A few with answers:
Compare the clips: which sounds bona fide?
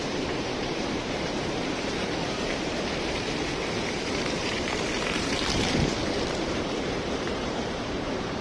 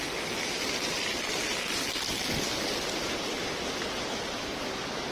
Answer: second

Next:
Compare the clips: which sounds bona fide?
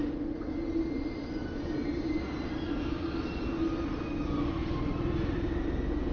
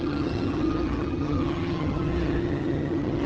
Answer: first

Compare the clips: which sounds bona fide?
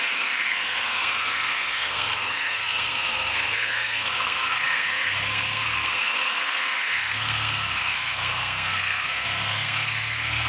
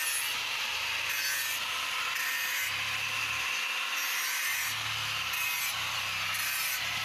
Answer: second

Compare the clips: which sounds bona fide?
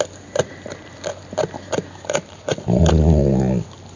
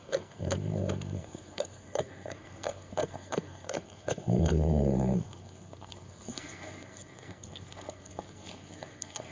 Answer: first